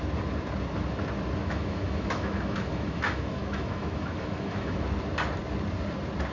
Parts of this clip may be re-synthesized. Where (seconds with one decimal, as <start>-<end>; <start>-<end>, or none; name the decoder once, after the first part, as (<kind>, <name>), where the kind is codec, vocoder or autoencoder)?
1.4-4.8 (autoencoder, DAC-VAE)